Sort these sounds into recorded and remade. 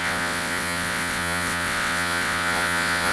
remade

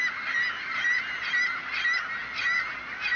recorded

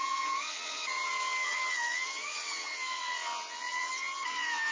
remade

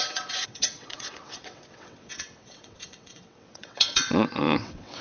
remade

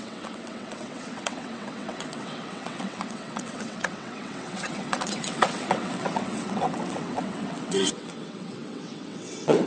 remade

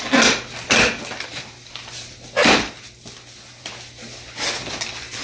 recorded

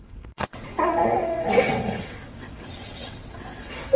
remade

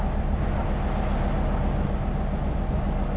recorded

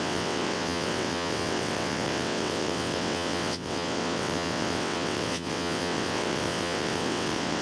remade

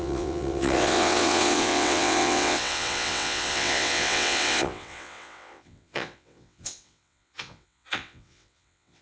remade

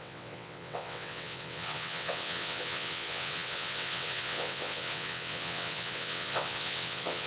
remade